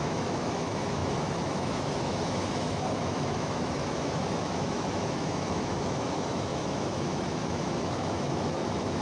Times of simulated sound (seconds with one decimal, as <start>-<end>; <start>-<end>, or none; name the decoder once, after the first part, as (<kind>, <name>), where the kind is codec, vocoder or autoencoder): 0.0-9.0 (autoencoder, DAC-VAE)

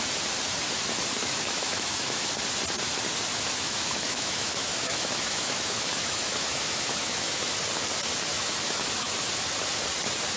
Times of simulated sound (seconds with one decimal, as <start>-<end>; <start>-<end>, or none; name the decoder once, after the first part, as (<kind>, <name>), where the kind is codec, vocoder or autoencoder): 1.2-2.3 (autoencoder, DAC-VAE); 3.3-7.6; 8.3-9.3